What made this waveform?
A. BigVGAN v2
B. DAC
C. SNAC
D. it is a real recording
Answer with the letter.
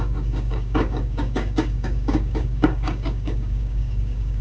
B